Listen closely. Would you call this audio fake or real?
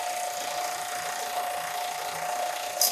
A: real